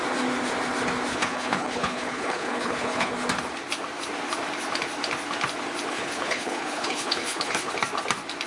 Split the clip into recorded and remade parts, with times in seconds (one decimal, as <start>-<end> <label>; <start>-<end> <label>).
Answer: 0.0-1.1 recorded; 1.1-3.1 remade; 3.1-5.9 recorded; 5.9-7.7 remade; 7.7-8.5 recorded